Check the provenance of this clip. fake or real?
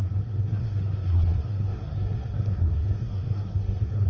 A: fake